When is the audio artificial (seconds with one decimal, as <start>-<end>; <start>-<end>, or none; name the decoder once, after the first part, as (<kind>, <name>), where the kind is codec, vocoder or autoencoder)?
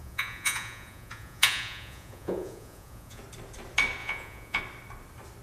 0.0-3.2 (vocoder, Vocos); 4.0-4.6